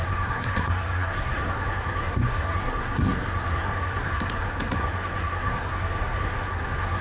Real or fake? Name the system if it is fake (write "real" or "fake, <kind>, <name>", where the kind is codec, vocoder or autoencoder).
fake, codec, SNAC